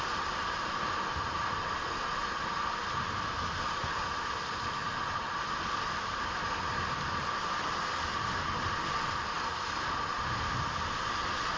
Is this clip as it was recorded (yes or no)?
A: yes